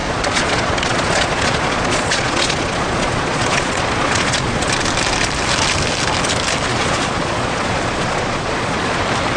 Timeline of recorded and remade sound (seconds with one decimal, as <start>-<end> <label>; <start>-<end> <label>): 0.0-4.7 remade; 4.7-6.7 recorded; 6.7-9.0 remade; 9.0-9.4 recorded